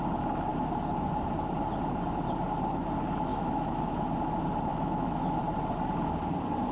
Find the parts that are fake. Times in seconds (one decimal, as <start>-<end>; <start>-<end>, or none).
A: 3.3-3.8; 4.7-5.4